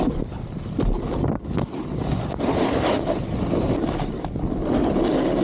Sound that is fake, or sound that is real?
real